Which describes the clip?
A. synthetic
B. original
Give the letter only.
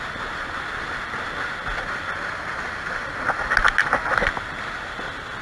B